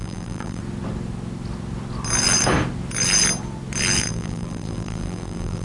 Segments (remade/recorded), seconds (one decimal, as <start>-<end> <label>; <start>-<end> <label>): 0.0-0.6 remade; 0.6-4.0 recorded; 4.0-5.6 remade